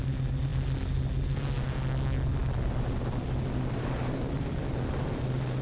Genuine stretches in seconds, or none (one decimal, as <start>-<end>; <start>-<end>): 0.0-5.6